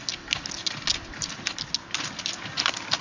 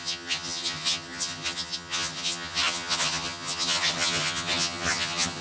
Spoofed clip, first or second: second